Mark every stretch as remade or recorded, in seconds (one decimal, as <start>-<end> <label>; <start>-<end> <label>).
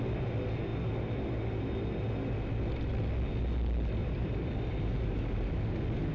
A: 0.0-4.0 recorded; 4.0-5.5 remade; 5.5-6.1 recorded